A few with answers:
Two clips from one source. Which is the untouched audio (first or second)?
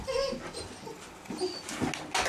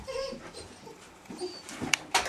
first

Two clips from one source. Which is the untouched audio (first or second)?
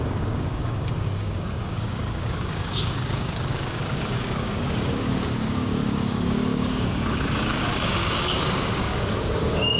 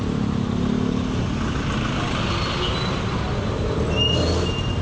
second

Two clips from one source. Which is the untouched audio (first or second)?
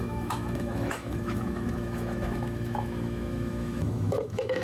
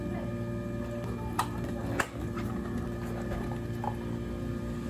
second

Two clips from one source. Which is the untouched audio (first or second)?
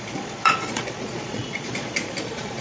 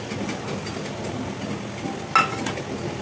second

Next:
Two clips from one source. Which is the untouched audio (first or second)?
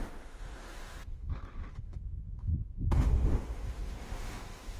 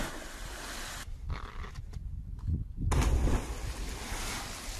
second